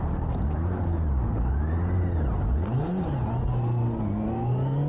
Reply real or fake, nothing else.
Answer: real